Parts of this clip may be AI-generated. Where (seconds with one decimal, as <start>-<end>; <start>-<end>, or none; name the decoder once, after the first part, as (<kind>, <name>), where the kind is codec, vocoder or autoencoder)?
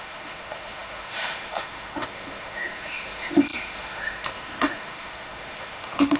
0.0-6.2 (autoencoder, DAC-VAE)